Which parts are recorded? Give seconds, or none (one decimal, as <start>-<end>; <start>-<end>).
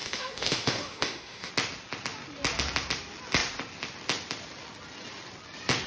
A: 1.5-5.9